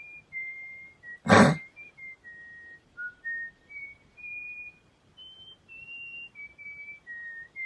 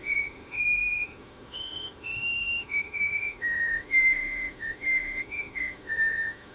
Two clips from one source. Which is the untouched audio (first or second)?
first